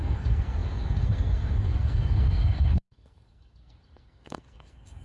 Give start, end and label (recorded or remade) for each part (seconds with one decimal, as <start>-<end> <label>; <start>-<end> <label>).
0.0-5.0 remade